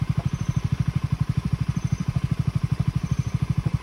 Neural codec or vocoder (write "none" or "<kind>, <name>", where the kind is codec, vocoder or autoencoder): vocoder, BigVGAN v2